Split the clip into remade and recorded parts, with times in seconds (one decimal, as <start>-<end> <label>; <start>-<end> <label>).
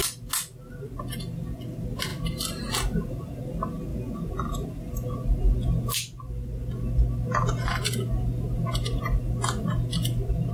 0.0-10.5 recorded